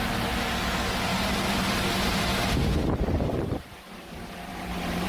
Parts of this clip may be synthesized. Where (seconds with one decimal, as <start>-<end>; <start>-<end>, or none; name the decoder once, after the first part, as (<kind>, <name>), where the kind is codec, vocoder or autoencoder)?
1.1-2.2 (vocoder, BigVGAN v2); 4.5-5.1